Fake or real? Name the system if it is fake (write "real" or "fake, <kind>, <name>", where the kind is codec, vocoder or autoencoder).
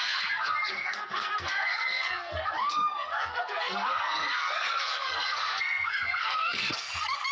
fake, codec, SNAC